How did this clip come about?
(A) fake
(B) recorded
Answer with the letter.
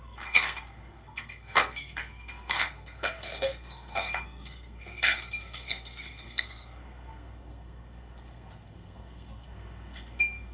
A